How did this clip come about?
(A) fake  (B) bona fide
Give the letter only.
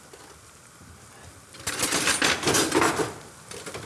B